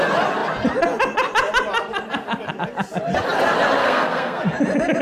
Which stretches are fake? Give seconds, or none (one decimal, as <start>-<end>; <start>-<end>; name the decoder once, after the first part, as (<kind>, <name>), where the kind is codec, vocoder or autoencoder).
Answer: 3.8-4.4 (codec, SNAC)